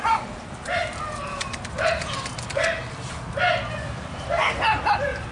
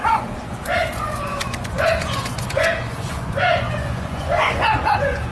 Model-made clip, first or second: second